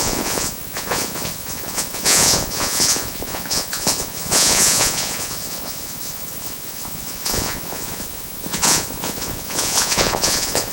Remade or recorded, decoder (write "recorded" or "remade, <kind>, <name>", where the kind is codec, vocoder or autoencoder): remade, vocoder, Vocos